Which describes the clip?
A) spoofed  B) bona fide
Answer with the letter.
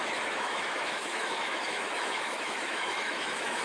A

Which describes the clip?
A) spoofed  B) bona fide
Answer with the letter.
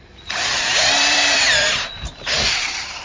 A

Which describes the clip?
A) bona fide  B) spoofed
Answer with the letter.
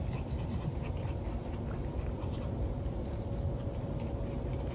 A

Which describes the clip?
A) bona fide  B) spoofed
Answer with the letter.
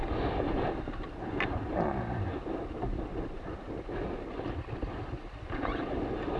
A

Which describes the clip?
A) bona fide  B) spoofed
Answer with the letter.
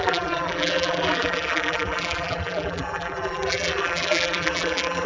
B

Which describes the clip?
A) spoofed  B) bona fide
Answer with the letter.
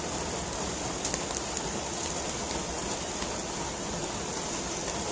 B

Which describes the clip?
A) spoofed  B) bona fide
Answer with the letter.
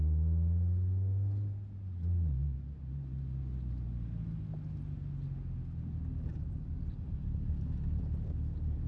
B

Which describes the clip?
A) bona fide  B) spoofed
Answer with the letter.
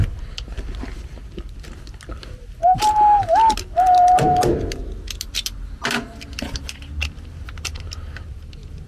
A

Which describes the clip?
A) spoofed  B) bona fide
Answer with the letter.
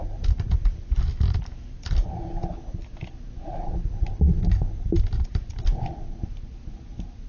B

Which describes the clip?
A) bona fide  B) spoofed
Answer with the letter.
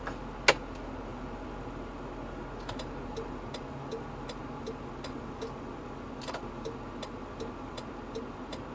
A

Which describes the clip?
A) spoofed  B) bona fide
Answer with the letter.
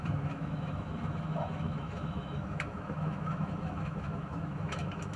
A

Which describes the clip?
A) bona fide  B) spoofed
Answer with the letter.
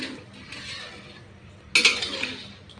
A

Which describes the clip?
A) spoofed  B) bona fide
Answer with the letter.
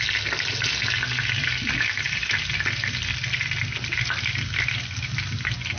B